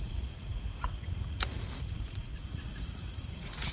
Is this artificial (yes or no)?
yes